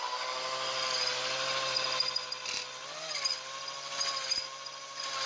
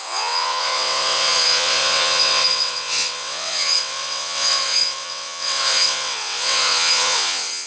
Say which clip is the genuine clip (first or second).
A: first